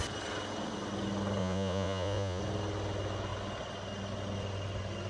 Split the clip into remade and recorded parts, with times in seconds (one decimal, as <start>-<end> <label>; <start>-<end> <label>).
0.0-1.4 recorded; 1.4-2.4 remade; 2.4-5.1 recorded